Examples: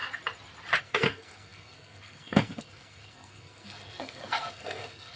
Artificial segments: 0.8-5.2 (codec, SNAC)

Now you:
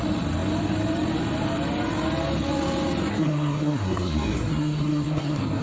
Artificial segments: 3.1-5.6 (codec, SNAC)

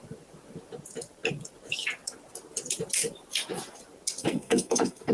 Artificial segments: 4.2-5.1 (codec, SNAC)

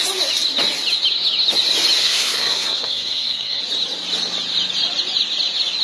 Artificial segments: 2.0-3.6 (codec, SNAC)

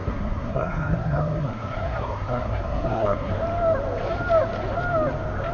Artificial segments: 0.0-3.3 (codec, SNAC)

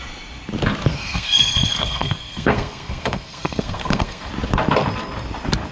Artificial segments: 0.9-4.3 (codec, SNAC)

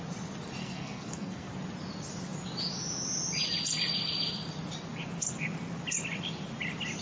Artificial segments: 0.6-1.5 (codec, SNAC)